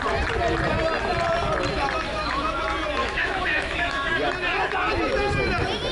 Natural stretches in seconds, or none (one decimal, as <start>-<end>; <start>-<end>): 0.0-2.1; 2.6-3.0; 4.1-5.9